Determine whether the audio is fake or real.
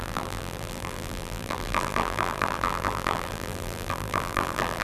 fake